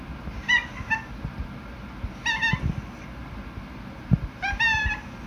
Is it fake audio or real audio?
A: real